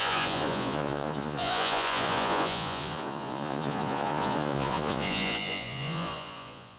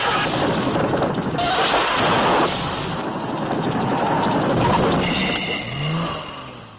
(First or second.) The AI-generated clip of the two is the first